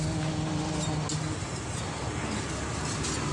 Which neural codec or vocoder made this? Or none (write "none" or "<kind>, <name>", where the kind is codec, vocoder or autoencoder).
none